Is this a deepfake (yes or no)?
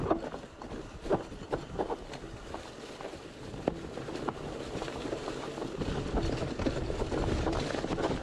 no